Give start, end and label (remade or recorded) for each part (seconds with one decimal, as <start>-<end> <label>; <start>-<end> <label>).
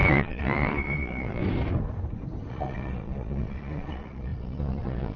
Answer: 0.0-1.4 remade; 1.4-2.5 recorded; 2.5-5.2 remade